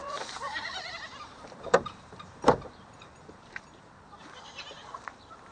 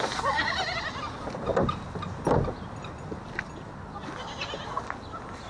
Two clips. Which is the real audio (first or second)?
second